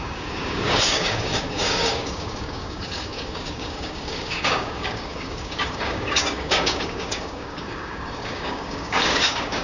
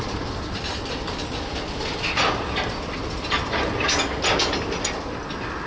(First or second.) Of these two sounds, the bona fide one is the second